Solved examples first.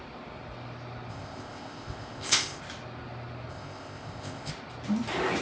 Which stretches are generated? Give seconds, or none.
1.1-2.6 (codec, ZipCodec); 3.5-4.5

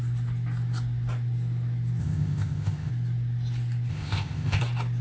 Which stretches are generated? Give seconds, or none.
2.0-2.9 (codec, ZipCodec); 3.9-4.6

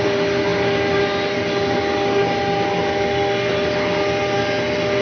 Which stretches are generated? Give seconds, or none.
none